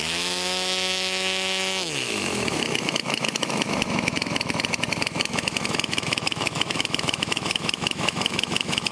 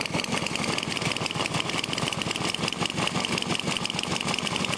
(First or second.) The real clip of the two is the second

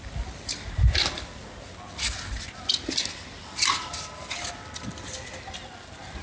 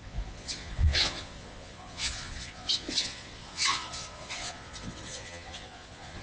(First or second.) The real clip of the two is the first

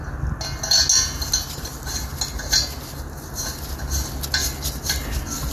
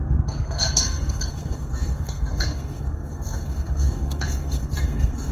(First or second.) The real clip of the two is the first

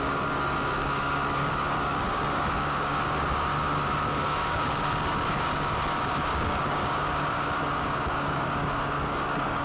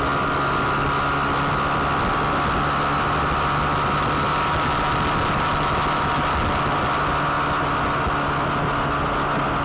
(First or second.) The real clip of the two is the second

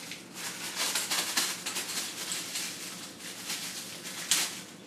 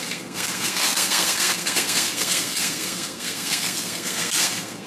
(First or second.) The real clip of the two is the first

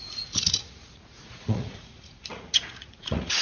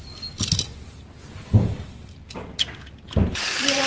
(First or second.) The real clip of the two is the second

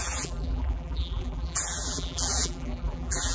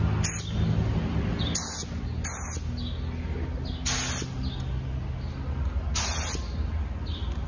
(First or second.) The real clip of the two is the second